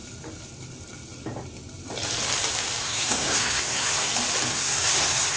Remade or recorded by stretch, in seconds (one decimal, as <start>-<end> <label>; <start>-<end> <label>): 0.0-2.8 recorded; 2.8-4.1 remade; 4.1-4.5 recorded; 4.5-5.4 remade